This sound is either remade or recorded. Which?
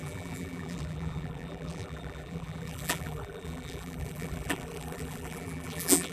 remade